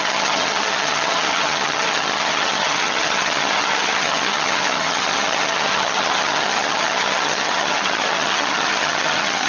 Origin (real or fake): fake